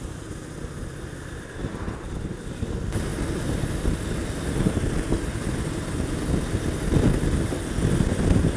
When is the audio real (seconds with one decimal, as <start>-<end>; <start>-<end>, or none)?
0.0-8.6